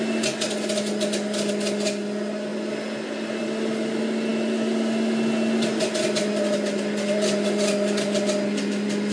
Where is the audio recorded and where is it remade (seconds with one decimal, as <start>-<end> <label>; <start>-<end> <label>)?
0.0-9.1 recorded